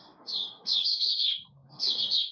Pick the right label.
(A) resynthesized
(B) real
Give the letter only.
A